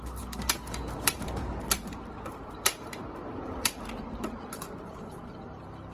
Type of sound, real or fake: fake